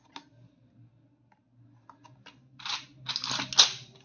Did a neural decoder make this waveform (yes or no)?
no